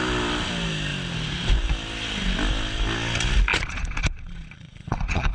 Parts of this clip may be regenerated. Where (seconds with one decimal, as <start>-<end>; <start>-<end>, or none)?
3.5-5.3